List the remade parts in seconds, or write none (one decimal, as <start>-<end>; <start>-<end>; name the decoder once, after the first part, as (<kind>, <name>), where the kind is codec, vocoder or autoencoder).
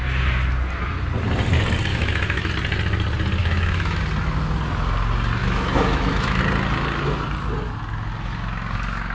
1.9-2.5 (autoencoder, DAC-VAE); 3.4-4.0; 5.4-6.4